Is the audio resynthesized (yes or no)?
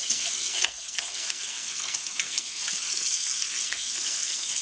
yes